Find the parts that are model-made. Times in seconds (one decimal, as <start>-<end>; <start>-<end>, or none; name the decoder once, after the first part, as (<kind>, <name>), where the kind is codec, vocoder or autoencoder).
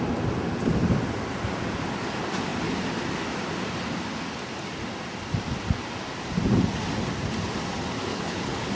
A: 8.1-8.7 (codec, HILCodec)